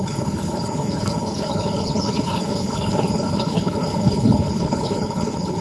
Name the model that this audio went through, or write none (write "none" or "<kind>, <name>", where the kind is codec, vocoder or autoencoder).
codec, HILCodec